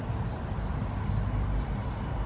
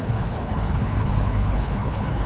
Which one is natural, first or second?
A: first